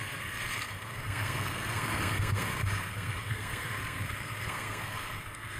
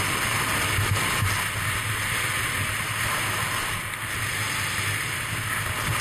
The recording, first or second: second